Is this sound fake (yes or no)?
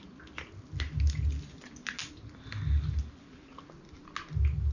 no